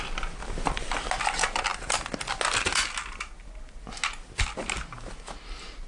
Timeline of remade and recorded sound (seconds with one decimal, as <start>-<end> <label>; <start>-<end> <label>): 0.0-0.4 recorded; 0.4-1.1 remade; 1.1-5.9 recorded